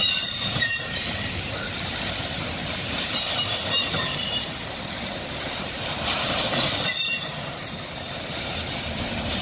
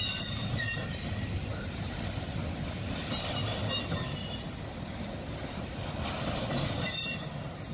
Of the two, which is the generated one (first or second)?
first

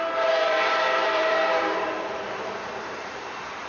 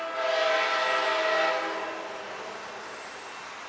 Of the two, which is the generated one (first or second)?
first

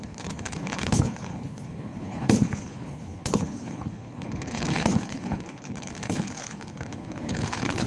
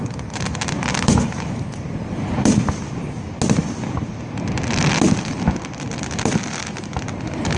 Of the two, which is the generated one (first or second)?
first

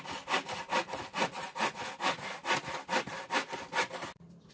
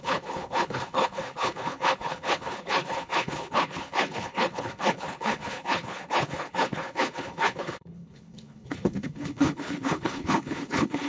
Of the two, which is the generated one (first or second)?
second